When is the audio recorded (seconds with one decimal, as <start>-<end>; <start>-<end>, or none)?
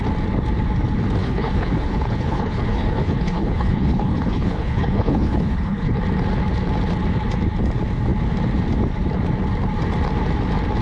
0.0-1.2; 6.0-10.8